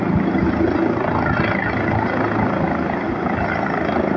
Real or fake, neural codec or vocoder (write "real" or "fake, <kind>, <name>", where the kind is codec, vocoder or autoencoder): real